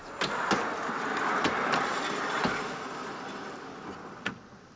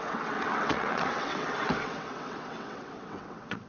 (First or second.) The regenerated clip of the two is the second